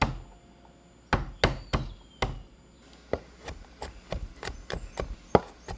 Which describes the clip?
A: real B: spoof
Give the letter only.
A